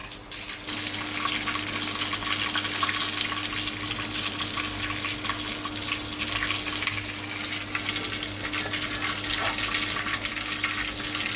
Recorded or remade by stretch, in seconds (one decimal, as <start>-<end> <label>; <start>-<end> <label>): 0.0-11.4 recorded